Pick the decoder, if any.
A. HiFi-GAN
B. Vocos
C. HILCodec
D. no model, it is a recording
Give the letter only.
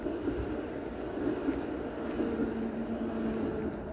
D